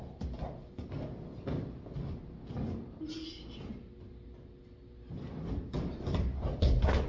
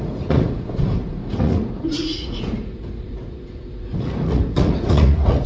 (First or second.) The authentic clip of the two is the first